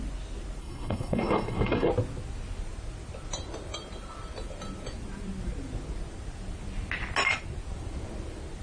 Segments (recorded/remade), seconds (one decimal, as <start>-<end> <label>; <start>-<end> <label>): 0.0-0.6 recorded; 0.6-1.9 remade; 1.9-8.6 recorded